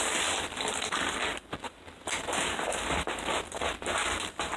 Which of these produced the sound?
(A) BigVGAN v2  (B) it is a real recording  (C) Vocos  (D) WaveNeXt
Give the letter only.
A